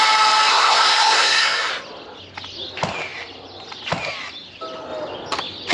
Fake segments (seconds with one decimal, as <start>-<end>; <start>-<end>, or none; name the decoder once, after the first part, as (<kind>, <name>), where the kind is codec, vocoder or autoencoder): 0.5-1.7 (codec, SNAC)